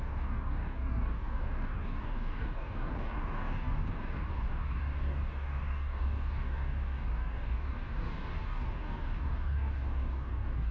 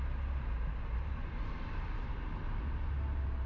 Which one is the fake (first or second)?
first